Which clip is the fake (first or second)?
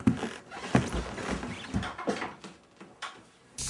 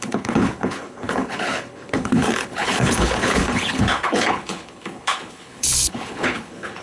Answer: second